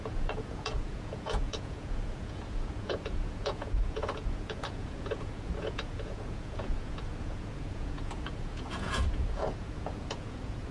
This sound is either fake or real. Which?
fake